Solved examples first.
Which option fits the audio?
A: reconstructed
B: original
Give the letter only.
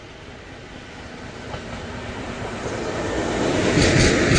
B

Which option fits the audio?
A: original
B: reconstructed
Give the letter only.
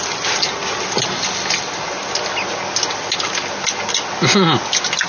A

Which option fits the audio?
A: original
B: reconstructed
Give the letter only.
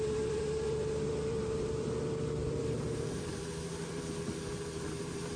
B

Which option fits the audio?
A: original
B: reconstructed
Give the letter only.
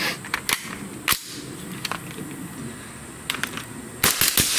A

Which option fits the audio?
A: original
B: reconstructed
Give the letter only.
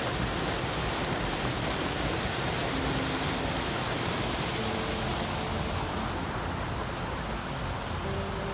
A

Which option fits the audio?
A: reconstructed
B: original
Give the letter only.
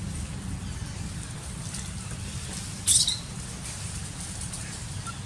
B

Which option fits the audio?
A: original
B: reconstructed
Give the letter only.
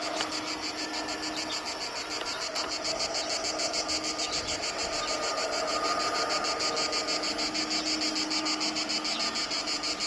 A